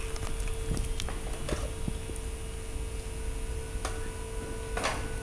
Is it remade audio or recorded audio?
recorded